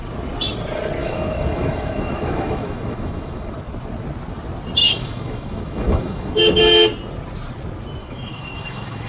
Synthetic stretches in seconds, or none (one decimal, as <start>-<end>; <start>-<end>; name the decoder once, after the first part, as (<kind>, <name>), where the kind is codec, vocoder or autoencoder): 1.0-3.5 (autoencoder, DAC-VAE); 4.8-6.6; 8.0-9.1